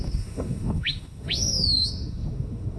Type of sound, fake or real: fake